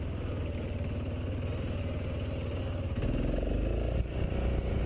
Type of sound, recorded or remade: recorded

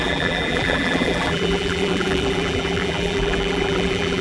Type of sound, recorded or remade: remade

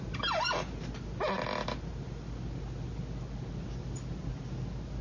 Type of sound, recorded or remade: recorded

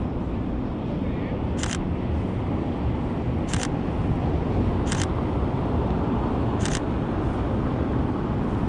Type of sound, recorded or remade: recorded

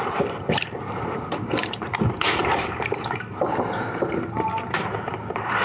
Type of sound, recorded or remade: remade